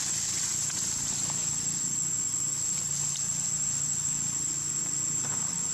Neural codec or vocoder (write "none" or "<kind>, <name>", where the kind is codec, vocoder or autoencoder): none